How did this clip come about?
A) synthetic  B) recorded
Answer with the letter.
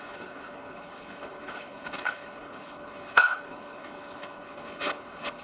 A